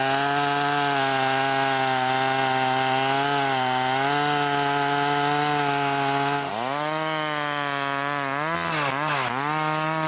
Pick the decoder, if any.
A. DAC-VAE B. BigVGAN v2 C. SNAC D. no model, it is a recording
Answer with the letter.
D